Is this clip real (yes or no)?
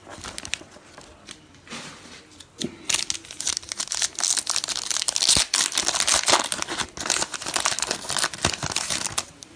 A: yes